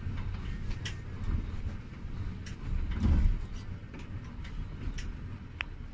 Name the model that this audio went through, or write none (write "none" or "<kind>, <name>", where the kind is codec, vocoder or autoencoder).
none